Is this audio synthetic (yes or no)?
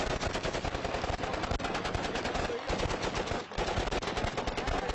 no